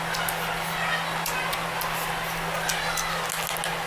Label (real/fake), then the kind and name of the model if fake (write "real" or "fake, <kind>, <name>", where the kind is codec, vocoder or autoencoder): real